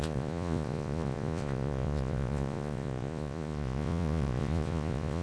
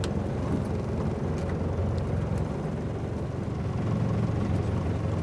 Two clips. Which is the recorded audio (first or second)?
second